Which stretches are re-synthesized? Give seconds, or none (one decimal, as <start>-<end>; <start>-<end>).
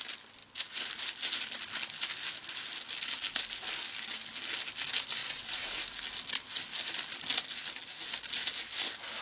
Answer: 5.2-5.8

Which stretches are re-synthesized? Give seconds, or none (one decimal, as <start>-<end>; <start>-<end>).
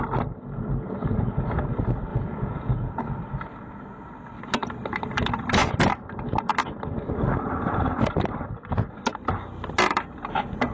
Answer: 2.1-3.0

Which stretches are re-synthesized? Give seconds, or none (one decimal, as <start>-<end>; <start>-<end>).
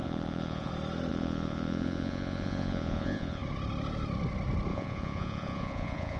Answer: 0.0-0.7; 1.1-3.4; 4.7-6.2